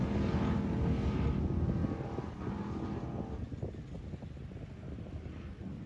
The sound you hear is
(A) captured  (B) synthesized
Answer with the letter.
A